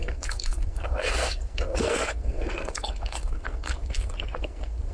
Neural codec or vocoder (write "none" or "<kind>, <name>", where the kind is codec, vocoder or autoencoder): codec, SNAC